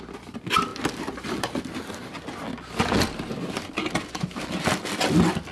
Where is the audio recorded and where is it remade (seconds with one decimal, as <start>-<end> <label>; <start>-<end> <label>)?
0.0-5.5 recorded